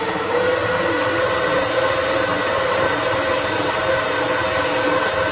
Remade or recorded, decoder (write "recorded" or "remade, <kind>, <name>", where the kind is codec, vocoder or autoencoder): recorded